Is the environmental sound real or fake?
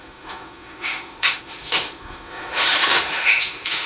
fake